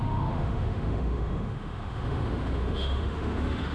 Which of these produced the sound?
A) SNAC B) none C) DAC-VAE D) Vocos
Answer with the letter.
C